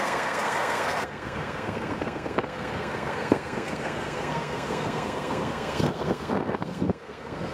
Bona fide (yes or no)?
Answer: no